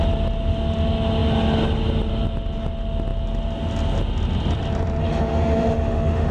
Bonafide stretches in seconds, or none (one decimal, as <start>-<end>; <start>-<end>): 0.0-5.0

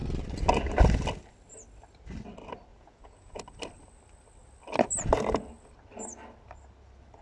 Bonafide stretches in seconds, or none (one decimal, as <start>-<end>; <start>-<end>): 0.0-2.7; 3.4-7.2

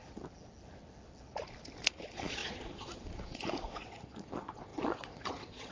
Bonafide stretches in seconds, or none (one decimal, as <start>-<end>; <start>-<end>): 0.0-2.0